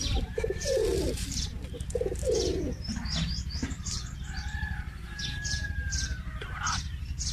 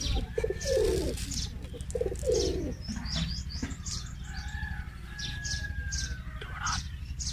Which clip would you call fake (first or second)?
first